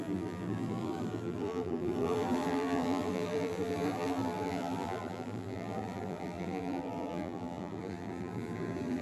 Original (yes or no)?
no